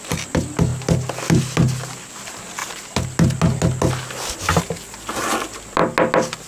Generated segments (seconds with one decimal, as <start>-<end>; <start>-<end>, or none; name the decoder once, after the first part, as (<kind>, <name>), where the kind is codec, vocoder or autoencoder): none